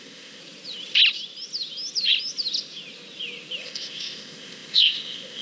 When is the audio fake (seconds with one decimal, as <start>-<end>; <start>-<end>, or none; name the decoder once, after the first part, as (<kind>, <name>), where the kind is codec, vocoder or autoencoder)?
0.0-0.4 (codec, ZipCodec); 3.6-5.4